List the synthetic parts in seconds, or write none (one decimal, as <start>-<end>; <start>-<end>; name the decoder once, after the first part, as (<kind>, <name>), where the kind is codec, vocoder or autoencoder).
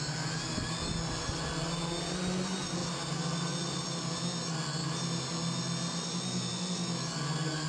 none